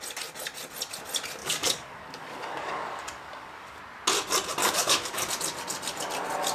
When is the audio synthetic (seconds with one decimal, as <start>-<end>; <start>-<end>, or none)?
1.4-3.8; 4.6-5.3